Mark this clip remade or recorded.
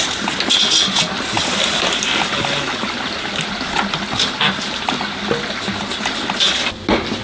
recorded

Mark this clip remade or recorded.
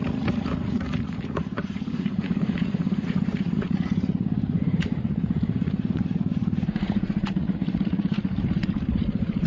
remade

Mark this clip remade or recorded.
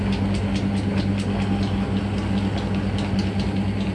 recorded